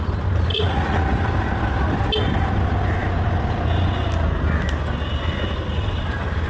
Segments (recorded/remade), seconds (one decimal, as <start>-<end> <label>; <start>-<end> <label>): 0.0-0.5 recorded; 0.5-1.2 remade; 1.2-6.5 recorded